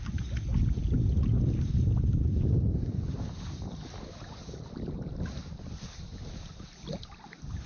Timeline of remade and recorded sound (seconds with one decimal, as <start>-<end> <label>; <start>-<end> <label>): 0.0-7.7 recorded